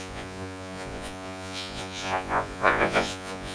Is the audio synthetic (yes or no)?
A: yes